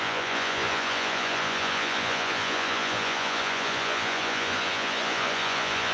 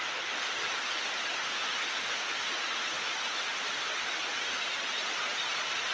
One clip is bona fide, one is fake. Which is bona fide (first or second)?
second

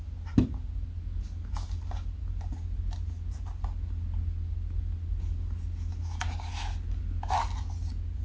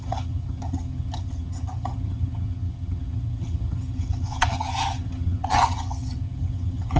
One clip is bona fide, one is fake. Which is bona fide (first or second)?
first